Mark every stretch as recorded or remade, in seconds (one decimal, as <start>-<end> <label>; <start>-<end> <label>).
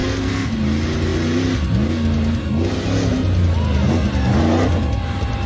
0.0-0.5 remade; 0.5-5.5 recorded